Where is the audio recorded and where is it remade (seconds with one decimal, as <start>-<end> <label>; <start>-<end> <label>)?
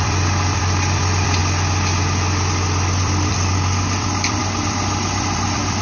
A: 0.0-1.4 remade; 1.4-3.0 recorded; 3.0-5.8 remade